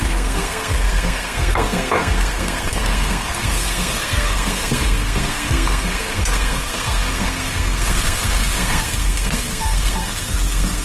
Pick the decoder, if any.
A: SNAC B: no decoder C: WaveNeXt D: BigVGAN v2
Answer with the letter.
A